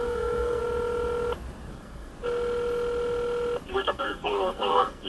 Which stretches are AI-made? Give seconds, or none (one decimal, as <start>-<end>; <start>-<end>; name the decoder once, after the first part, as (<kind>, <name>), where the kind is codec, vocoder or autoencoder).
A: 0.0-0.6 (codec, SNAC); 1.7-2.1; 3.7-5.1